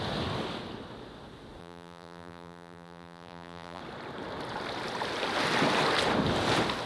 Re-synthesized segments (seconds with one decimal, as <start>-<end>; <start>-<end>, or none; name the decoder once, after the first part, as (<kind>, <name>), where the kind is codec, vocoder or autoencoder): 1.6-3.8 (vocoder, BigVGAN v2)